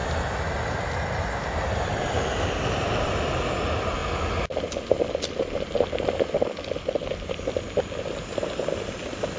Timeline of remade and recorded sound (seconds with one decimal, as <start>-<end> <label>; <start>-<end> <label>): 0.0-9.4 recorded